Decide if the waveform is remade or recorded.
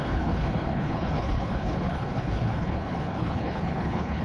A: remade